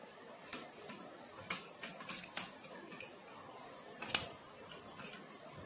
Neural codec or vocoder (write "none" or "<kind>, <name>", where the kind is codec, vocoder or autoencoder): vocoder, BigVGAN v2